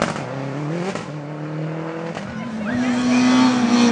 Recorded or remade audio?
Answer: recorded